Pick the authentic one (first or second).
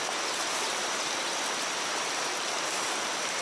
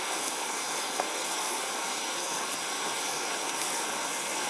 first